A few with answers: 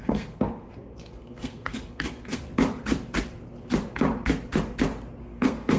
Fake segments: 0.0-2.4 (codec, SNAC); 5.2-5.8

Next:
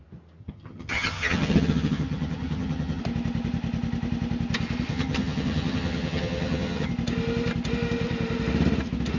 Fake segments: 0.4-3.0 (vocoder, HiFi-GAN); 4.9-6.9